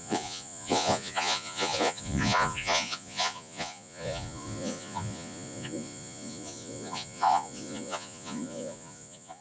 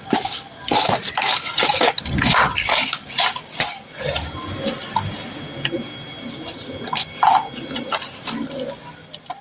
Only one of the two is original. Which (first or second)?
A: second